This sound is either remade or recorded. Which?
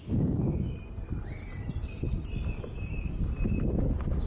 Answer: recorded